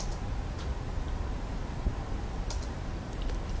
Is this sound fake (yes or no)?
no